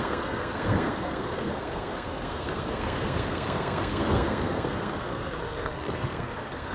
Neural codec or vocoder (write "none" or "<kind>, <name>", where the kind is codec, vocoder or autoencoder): codec, SNAC